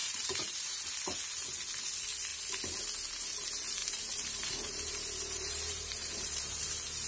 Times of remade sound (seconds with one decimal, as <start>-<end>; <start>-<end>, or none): 0.0-0.8; 3.8-6.6